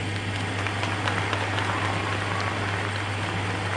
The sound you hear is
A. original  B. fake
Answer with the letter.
A